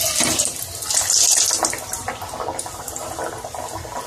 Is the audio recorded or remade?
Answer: recorded